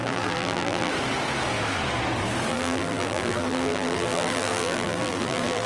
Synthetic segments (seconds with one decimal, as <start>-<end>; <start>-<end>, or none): 0.0-0.9; 2.5-5.7